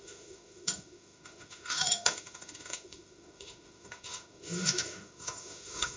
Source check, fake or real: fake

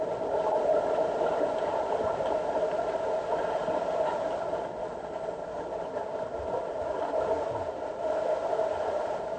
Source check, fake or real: real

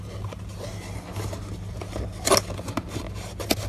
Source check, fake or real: real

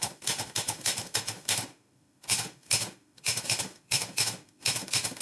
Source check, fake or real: fake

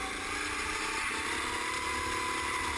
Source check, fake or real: real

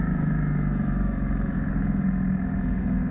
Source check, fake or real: fake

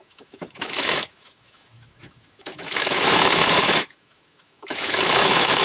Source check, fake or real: fake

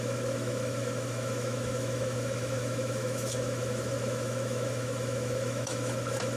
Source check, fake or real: fake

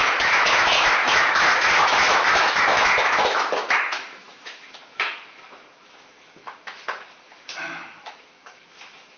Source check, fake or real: fake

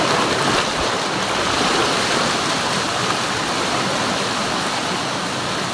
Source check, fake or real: real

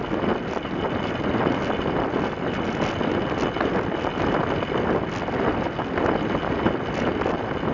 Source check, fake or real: real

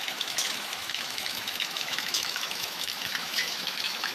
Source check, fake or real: fake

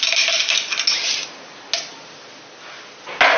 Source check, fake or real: real